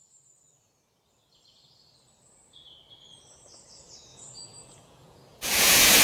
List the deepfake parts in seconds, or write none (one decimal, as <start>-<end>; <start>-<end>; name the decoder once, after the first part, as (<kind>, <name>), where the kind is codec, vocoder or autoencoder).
4.1-6.0 (vocoder, Vocos)